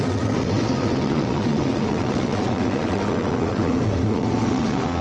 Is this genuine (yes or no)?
no